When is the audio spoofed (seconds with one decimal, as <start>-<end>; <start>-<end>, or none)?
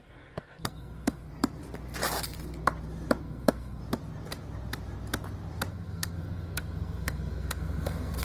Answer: 0.0-1.3; 3.2-3.8; 5.7-8.2